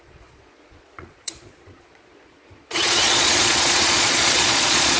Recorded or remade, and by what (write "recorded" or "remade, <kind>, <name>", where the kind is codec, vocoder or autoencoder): remade, vocoder, Vocos